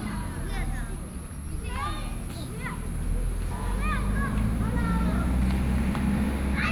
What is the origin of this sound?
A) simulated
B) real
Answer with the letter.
B